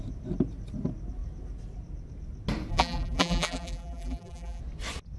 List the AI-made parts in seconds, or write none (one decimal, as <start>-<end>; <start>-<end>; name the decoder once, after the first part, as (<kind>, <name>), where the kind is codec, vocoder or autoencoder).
2.7-4.6 (vocoder, BigVGAN v2)